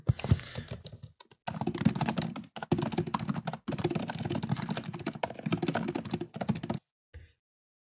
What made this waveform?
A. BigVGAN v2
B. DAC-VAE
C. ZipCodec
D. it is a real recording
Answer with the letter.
D